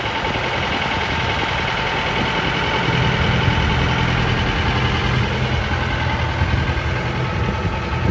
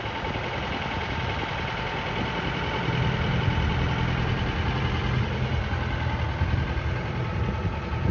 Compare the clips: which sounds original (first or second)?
first